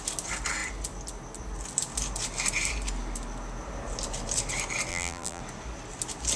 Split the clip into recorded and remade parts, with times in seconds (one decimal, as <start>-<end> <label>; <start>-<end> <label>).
0.0-4.9 recorded; 4.9-5.4 remade; 5.4-6.4 recorded